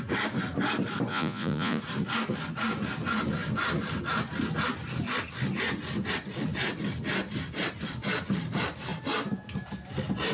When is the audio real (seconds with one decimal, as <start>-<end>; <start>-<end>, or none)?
0.0-1.1; 1.8-10.3

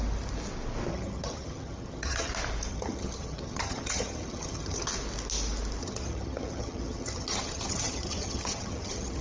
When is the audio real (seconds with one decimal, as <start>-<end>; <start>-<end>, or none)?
0.0-0.9; 2.3-2.7; 4.9-5.8

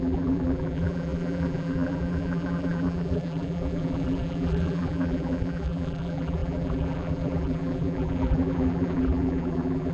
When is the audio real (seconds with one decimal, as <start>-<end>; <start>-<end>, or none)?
none

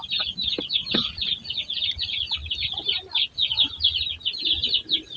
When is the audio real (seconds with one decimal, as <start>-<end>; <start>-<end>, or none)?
0.0-5.2

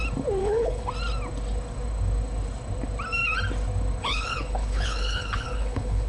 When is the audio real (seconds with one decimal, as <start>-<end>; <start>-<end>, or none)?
0.0-0.4; 0.9-4.0

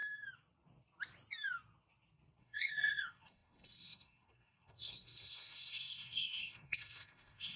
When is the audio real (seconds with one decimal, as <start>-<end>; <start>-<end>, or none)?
0.0-2.4

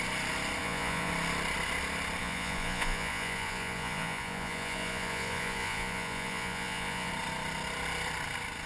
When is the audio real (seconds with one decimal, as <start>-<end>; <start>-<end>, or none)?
0.0-0.6; 1.1-2.2; 7.1-8.7